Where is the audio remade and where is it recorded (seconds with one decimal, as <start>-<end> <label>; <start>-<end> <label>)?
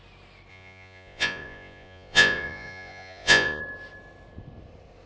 0.0-0.5 recorded; 0.5-3.6 remade; 3.6-5.1 recorded